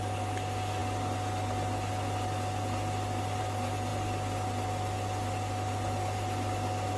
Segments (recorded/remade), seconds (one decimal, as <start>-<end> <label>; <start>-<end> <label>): 0.0-7.0 recorded